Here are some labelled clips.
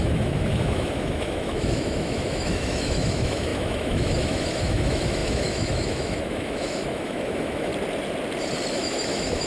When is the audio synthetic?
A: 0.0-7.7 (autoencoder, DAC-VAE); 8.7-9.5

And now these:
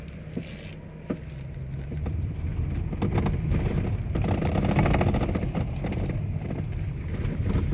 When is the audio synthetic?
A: none

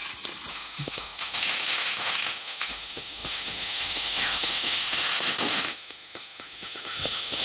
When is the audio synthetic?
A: 0.5-7.4 (autoencoder, DAC-VAE)

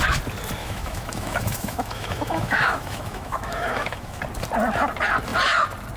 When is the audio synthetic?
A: 0.6-4.2 (autoencoder, DAC-VAE)

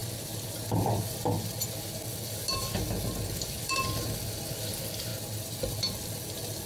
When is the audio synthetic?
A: none

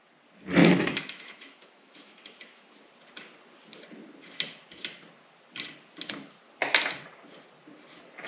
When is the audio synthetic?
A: 0.6-2.7 (autoencoder, DAC-VAE)

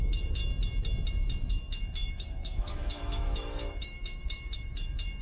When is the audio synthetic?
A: 0.0-0.4 (autoencoder, DAC-VAE); 1.5-5.2